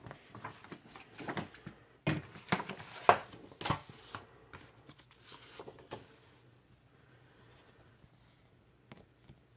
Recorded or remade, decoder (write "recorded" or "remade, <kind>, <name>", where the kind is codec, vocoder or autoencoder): recorded